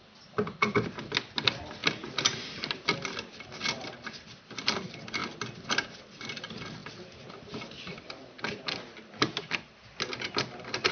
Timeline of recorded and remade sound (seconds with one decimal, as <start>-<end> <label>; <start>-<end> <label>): 0.0-10.9 recorded